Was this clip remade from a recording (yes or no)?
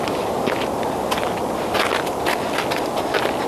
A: no